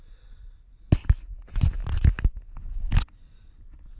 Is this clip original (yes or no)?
yes